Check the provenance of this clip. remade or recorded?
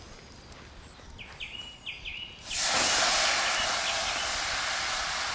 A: recorded